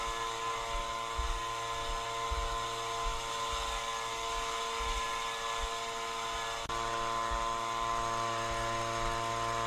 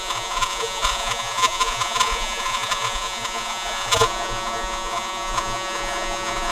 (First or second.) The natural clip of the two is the first